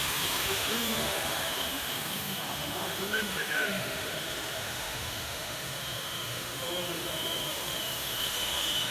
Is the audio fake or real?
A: fake